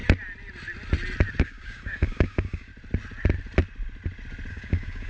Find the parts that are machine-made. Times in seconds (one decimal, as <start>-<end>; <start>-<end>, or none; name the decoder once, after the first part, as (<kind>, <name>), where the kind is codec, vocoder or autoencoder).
1.4-2.7 (codec, DAC); 4.5-5.1